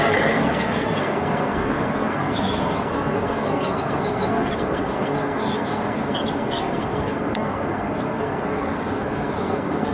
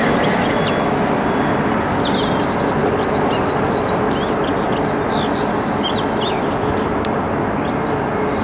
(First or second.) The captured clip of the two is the second